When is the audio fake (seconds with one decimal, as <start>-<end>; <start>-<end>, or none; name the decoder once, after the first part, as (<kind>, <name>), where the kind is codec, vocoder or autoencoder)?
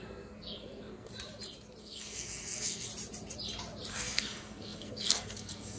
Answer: 0.0-1.1 (codec, SNAC); 1.8-2.9; 3.9-5.8